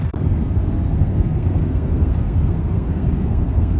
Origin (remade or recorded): remade